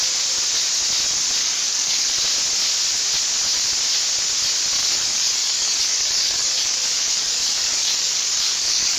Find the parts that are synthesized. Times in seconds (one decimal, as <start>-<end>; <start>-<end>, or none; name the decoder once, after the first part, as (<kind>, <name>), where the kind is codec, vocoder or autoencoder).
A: 1.4-2.2 (codec, DAC); 4.8-9.0